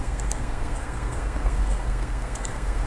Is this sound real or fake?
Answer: fake